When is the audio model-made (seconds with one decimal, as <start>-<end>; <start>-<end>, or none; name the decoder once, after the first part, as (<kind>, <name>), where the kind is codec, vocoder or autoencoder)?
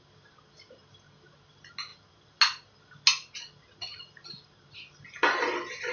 none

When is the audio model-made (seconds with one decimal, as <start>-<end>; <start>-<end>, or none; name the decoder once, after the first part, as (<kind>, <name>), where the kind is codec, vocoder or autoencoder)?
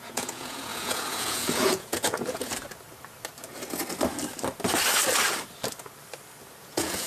0.0-2.5 (vocoder, Vocos); 6.6-7.1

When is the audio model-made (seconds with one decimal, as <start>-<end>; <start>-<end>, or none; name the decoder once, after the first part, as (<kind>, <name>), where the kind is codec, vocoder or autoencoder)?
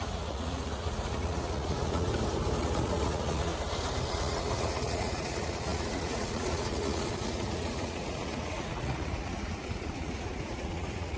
0.0-2.1 (vocoder, Vocos); 2.6-3.5; 4.1-11.2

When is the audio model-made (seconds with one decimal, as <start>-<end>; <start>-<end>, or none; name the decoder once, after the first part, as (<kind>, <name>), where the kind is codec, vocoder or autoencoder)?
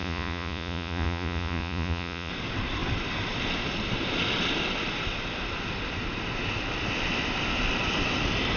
0.0-2.3 (vocoder, Vocos)